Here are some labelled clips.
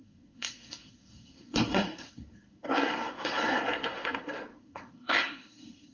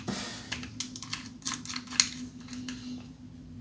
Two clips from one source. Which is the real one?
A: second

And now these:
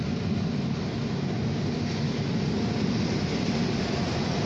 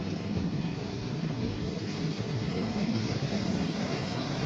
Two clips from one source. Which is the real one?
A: first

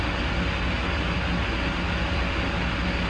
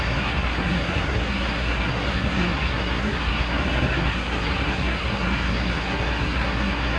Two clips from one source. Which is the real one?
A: first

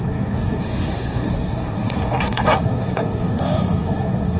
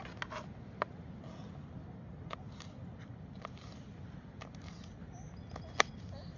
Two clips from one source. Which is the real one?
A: second